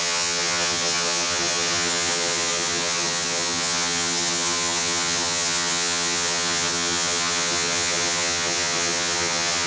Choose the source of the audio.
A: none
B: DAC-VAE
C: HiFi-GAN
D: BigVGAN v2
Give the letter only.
C